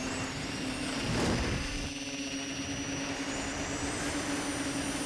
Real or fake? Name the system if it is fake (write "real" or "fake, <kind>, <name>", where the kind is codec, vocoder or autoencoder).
real